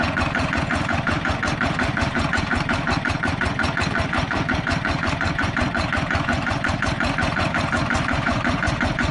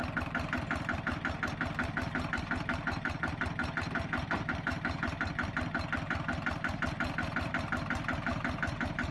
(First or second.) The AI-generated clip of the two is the first